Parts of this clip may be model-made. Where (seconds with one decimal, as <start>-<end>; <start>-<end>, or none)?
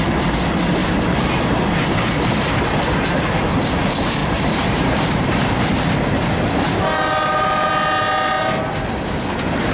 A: 0.8-1.8; 4.2-7.7